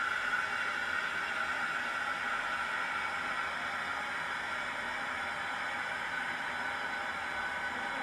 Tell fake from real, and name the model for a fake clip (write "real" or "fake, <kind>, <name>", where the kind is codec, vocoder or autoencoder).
real